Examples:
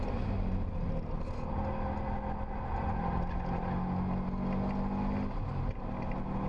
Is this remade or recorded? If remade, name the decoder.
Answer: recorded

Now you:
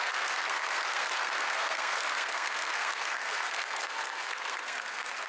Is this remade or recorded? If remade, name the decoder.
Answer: remade, codec, SNAC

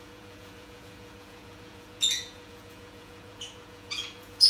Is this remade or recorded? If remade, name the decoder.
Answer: remade, vocoder, Vocos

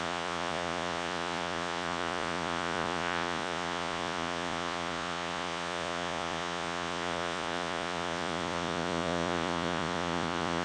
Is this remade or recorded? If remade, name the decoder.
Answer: remade, vocoder, Vocos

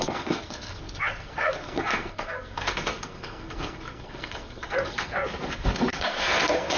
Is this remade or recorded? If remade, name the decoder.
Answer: remade, codec, SNAC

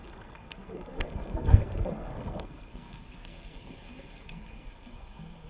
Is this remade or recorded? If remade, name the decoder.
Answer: remade, codec, SNAC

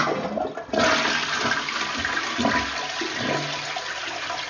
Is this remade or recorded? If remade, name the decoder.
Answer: recorded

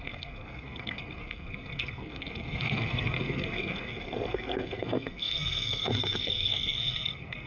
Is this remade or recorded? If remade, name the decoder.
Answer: remade, codec, SNAC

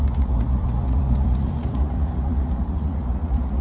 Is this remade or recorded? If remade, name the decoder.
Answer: remade, vocoder, Vocos